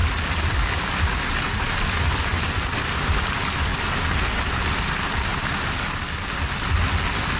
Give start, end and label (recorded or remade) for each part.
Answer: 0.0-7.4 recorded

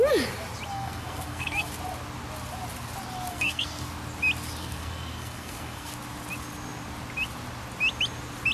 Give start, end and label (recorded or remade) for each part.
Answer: 0.0-0.7 recorded; 0.7-1.7 remade; 1.7-3.3 recorded; 3.3-3.9 remade; 3.9-4.6 recorded; 4.6-5.9 remade; 5.9-8.5 recorded

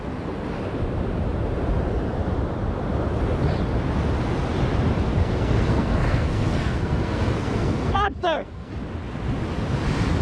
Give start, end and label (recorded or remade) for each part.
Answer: 0.0-5.1 recorded; 5.1-8.7 remade; 8.7-10.2 recorded

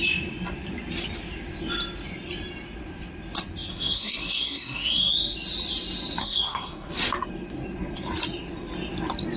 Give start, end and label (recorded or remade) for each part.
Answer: 0.0-3.7 recorded; 3.7-5.1 remade; 5.1-6.2 recorded; 6.2-6.9 remade; 6.9-9.4 recorded

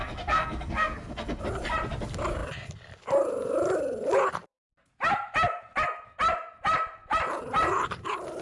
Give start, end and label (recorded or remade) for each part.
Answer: 0.0-1.4 remade; 1.4-8.4 recorded

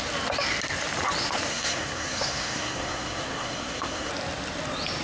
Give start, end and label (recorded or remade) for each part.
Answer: 0.0-1.5 recorded; 1.5-4.1 remade; 4.1-5.0 recorded

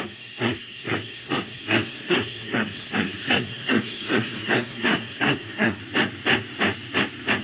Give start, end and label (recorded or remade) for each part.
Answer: 0.0-5.8 remade; 5.8-7.4 recorded

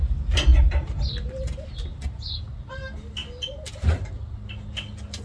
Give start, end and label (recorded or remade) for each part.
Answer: 0.0-5.2 recorded